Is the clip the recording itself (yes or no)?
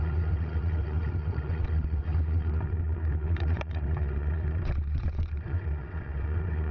no